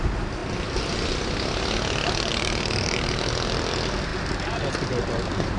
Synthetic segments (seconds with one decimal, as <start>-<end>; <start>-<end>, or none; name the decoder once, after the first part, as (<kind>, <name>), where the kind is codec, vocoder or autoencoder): 2.3-3.3 (vocoder, BigVGAN v2); 4.1-5.6